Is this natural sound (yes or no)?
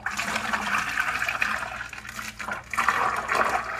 yes